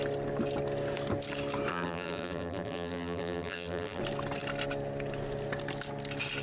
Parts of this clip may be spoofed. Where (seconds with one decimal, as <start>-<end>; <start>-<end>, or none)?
1.7-4.0